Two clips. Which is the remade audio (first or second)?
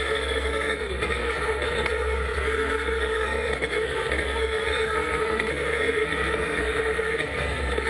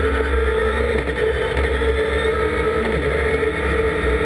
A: first